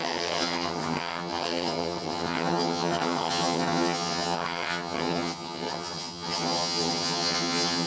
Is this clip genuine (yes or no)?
no